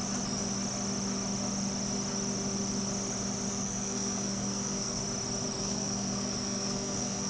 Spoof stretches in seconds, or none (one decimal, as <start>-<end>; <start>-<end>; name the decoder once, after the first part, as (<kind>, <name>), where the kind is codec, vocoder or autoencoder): 3.5-5.0 (codec, SNAC); 5.6-7.3